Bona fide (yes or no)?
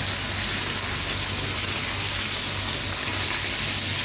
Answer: yes